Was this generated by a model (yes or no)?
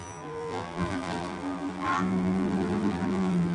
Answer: yes